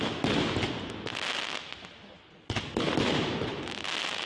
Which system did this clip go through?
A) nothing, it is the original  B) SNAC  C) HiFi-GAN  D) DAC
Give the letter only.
A